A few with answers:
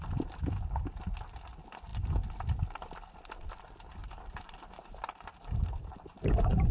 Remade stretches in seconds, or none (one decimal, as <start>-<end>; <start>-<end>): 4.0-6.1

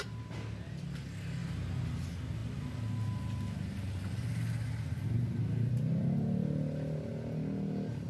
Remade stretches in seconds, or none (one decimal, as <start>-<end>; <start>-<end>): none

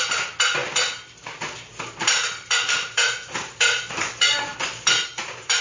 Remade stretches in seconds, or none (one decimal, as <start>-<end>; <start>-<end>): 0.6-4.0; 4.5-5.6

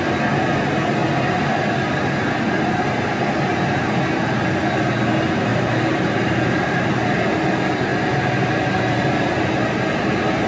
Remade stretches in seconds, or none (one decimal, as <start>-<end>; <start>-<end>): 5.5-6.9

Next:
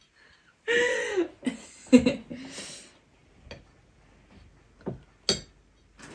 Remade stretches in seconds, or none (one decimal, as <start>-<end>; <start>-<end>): none

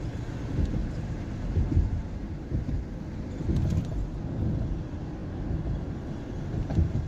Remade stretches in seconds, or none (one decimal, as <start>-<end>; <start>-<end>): 0.8-3.3